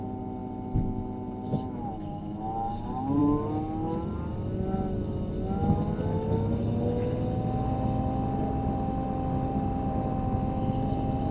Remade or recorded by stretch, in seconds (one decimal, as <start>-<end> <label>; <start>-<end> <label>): 0.0-11.3 recorded